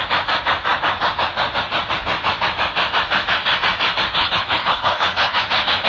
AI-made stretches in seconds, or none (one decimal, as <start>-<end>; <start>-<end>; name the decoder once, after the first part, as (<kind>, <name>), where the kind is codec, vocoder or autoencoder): 4.2-5.4 (codec, HILCodec)